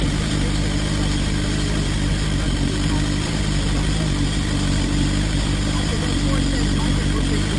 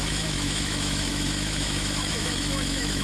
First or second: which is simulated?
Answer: second